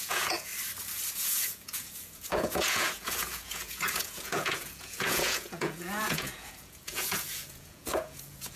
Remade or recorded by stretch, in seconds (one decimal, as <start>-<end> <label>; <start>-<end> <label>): 0.0-0.5 remade; 0.5-1.1 recorded; 1.1-8.6 remade